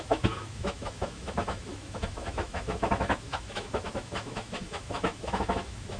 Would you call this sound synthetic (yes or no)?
yes